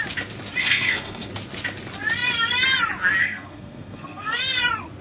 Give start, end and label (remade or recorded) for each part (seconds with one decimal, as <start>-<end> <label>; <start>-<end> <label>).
0.0-0.6 recorded; 0.6-1.3 remade; 1.3-3.2 recorded; 3.2-4.4 remade; 4.4-5.0 recorded